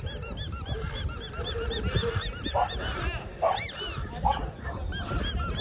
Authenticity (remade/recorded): recorded